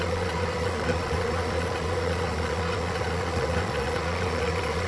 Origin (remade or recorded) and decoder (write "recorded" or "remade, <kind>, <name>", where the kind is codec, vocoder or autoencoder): remade, vocoder, Vocos